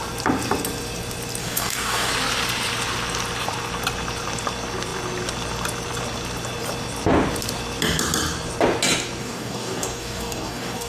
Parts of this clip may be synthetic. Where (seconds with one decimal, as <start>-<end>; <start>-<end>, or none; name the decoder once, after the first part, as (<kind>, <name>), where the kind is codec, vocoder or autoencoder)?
1.4-2.1 (codec, DAC); 9.2-10.9